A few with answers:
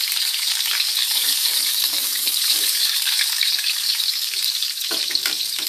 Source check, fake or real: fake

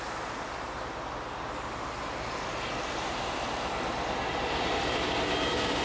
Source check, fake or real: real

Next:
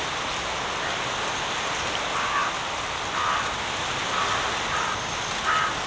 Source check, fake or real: real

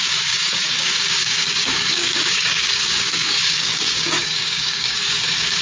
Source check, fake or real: fake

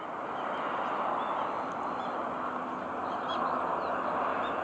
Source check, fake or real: real